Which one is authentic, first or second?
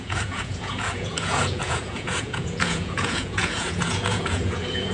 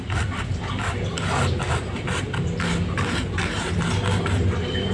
second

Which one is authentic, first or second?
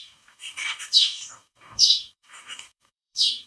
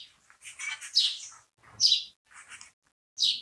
second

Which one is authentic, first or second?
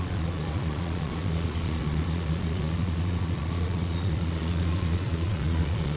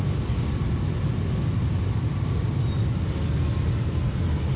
second